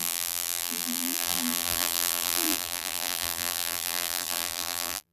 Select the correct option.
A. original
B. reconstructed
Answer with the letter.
B